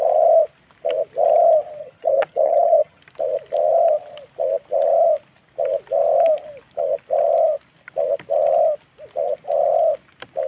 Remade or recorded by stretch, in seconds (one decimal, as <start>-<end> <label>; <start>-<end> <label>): 0.0-1.8 recorded; 1.8-3.0 remade; 3.0-10.5 recorded